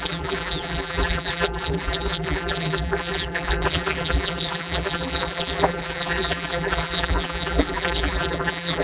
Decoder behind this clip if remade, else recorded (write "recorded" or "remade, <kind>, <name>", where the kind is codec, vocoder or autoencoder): remade, vocoder, BigVGAN v2